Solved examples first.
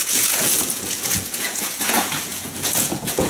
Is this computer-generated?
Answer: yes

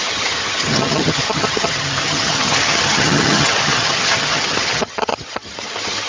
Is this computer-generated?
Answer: yes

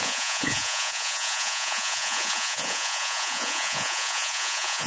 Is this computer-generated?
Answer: yes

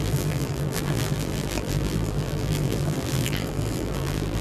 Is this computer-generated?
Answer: yes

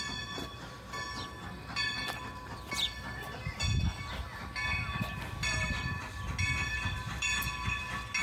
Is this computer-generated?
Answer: no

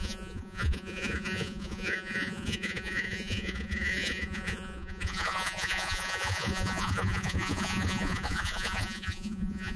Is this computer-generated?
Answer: yes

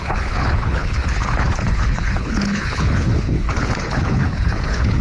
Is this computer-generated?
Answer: yes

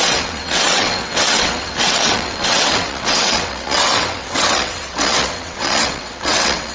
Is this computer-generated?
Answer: yes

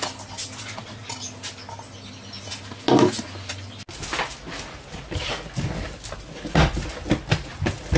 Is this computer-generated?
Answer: no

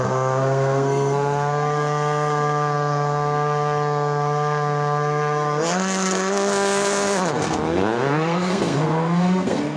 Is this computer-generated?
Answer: yes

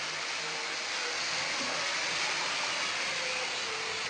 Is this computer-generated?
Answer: no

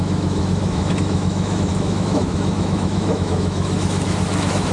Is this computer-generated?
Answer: yes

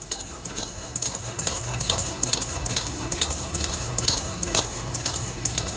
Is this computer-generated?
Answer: yes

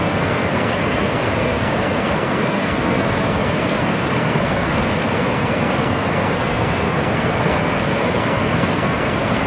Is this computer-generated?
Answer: yes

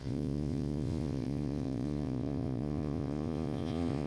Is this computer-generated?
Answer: yes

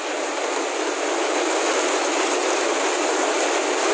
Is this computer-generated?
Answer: no